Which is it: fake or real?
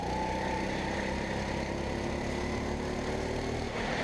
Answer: real